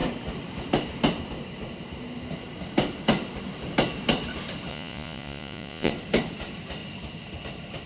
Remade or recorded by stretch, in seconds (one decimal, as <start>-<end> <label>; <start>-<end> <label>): 0.0-4.7 recorded; 4.7-5.9 remade; 5.9-7.9 recorded